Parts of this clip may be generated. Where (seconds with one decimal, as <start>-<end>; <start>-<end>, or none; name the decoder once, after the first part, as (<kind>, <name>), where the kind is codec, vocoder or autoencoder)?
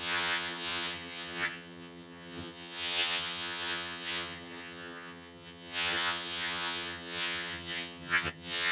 0.0-8.7 (vocoder, HiFi-GAN)